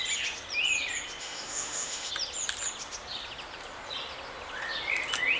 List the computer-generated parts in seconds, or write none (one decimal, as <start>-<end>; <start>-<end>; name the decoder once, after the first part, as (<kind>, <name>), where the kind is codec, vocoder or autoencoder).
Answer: 1.2-2.1 (autoencoder, DAC-VAE)